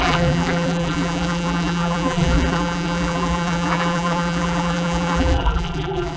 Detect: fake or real fake